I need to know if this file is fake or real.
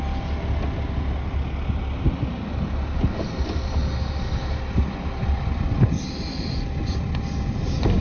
real